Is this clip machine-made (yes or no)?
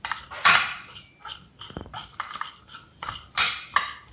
yes